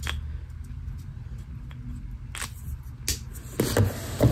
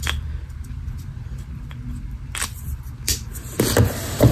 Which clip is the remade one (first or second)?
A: second